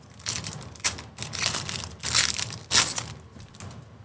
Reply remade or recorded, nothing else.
recorded